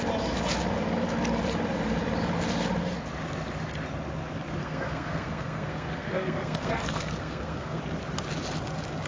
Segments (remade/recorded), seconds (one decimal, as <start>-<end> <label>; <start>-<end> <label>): 0.0-4.6 recorded; 4.6-7.8 remade; 7.8-9.1 recorded